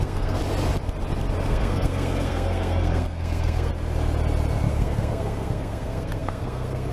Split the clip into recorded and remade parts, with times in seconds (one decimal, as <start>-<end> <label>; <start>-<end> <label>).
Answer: 0.0-0.4 remade; 0.4-1.5 recorded; 1.5-3.7 remade; 3.7-4.7 recorded; 4.7-6.9 remade